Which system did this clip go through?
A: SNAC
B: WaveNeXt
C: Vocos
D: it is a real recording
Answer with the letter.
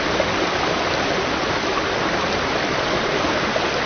D